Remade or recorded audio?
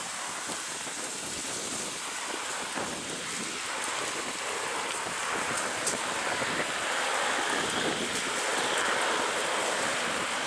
recorded